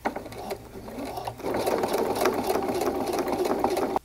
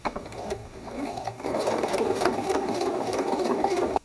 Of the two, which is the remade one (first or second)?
second